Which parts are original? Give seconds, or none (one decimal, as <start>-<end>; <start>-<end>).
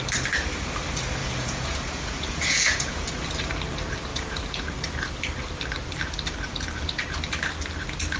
0.0-1.2; 3.1-4.1; 4.7-8.2